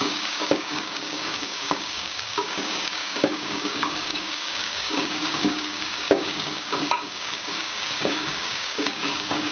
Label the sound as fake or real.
fake